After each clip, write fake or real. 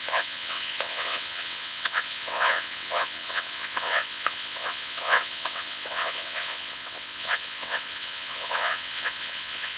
fake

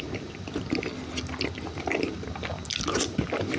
real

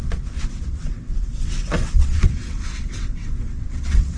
fake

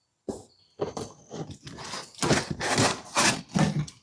real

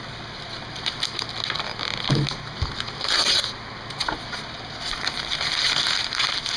real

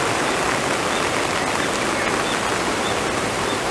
real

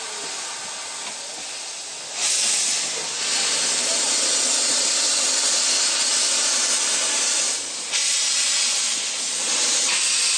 real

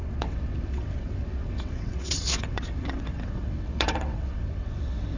fake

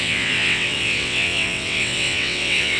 fake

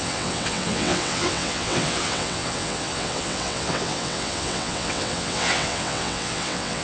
fake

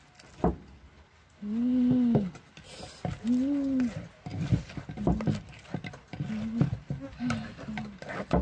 real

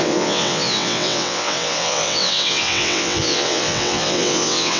fake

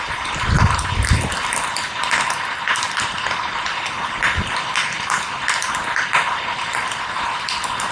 real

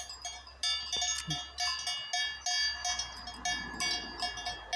real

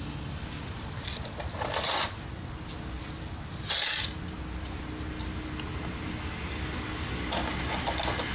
real